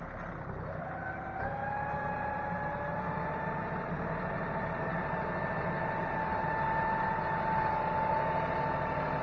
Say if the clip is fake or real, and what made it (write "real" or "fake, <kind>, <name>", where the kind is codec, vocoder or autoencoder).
real